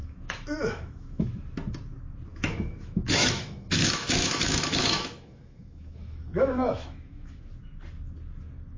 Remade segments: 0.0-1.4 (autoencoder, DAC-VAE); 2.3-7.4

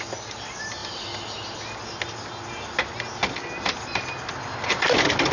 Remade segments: none